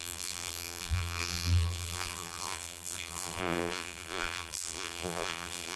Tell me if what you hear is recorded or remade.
remade